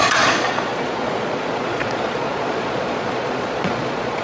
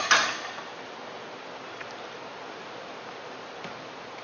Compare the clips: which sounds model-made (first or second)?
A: first